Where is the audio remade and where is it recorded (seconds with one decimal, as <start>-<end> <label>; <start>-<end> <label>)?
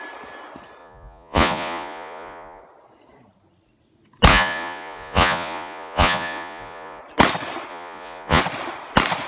0.0-0.8 recorded; 0.8-2.6 remade; 2.6-4.3 recorded; 4.3-7.0 remade; 7.0-7.7 recorded; 7.7-8.4 remade; 8.4-9.3 recorded